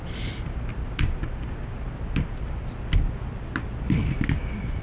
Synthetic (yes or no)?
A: no